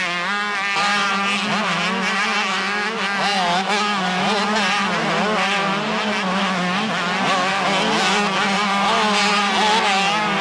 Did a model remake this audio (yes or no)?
no